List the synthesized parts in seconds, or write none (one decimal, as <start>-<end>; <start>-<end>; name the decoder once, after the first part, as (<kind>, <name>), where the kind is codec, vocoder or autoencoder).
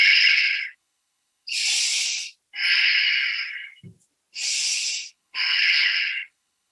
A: 0.0-1.6 (codec, HILCodec); 5.1-6.7